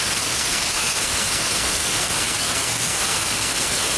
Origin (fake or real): fake